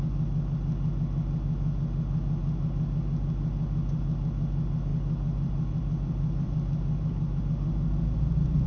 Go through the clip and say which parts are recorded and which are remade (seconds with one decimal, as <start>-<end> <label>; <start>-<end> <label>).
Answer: 0.0-4.9 recorded; 4.9-7.4 remade; 7.4-8.7 recorded